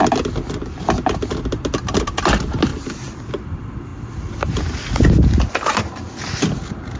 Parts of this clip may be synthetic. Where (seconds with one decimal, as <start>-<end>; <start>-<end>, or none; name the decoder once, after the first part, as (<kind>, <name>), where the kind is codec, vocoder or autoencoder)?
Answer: 2.7-3.3 (vocoder, BigVGAN v2)